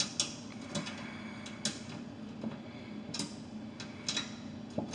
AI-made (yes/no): no